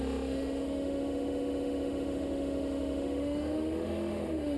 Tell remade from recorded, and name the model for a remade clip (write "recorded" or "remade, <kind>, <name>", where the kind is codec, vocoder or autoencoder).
remade, autoencoder, DAC-VAE